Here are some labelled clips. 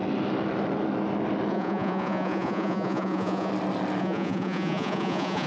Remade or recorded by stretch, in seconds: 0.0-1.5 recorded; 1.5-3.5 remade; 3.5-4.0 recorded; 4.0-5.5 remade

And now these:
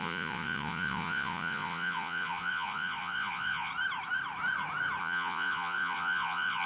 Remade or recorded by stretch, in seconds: 0.0-3.7 remade; 3.7-5.0 recorded; 5.0-6.7 remade